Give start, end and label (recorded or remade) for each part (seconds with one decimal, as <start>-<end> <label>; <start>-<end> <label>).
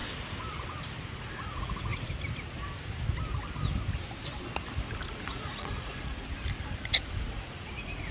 0.0-1.1 recorded; 1.1-1.9 remade; 1.9-5.1 recorded; 5.1-6.1 remade; 6.1-7.1 recorded; 7.1-8.1 remade